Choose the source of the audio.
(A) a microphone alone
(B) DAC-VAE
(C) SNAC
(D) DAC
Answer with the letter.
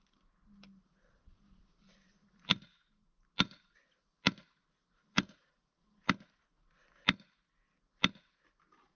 A